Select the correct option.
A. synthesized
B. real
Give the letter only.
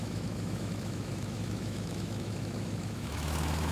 A